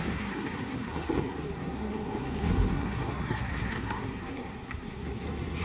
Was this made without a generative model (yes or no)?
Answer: no